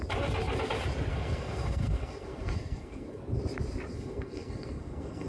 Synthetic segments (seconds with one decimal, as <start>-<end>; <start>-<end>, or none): 1.1-3.2; 3.9-5.3